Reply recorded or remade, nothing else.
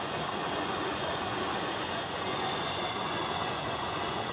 remade